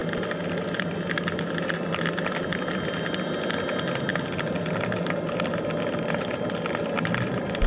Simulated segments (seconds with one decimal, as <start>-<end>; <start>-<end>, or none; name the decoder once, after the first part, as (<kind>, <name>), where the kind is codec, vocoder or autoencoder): none